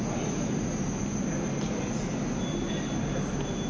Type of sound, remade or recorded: recorded